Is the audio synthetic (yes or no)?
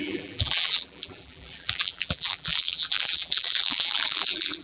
yes